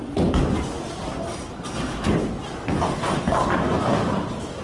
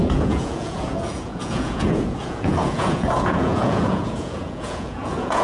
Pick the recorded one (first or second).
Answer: first